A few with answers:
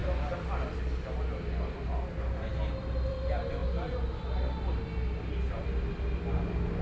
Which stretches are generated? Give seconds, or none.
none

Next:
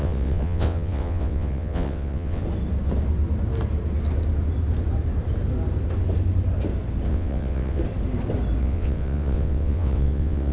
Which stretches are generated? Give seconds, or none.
0.0-2.4 (vocoder, WaveNeXt); 7.1-7.8; 8.6-10.5